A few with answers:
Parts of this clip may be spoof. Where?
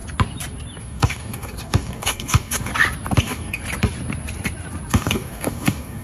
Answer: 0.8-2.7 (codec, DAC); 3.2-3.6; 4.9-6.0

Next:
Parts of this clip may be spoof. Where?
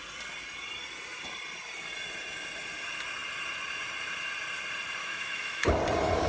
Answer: 5.0-5.8 (autoencoder, DAC-VAE)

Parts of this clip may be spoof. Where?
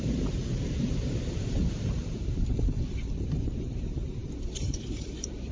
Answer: 0.0-5.5 (vocoder, BigVGAN v2)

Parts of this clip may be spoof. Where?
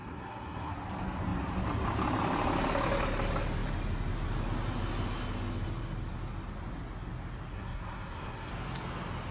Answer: 0.0-0.7 (codec, SNAC); 7.5-8.5